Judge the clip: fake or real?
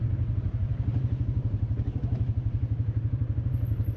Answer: fake